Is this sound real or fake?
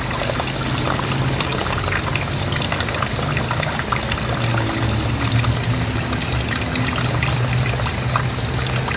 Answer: real